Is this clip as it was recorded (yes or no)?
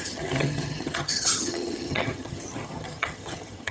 no